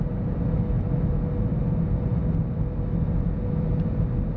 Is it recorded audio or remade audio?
recorded